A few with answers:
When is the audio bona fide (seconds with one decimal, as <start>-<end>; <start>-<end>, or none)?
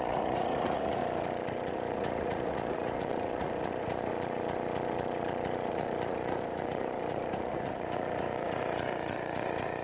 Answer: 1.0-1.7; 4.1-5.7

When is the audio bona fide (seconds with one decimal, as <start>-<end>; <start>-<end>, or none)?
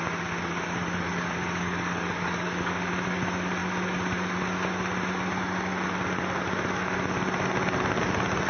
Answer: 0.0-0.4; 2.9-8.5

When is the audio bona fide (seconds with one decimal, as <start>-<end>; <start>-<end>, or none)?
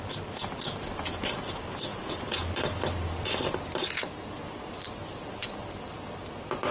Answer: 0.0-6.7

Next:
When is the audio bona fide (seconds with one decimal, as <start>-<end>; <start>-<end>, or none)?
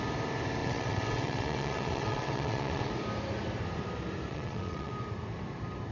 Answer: 0.0-0.6; 2.9-4.3; 4.9-5.9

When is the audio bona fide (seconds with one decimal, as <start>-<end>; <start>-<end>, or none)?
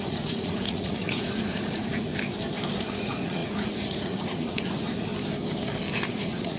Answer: 2.1-2.8; 5.1-6.1